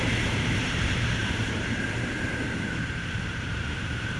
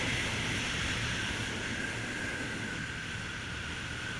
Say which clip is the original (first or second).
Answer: second